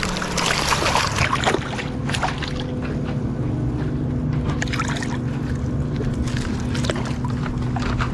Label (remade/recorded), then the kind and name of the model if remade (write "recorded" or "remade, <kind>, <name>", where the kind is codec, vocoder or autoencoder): recorded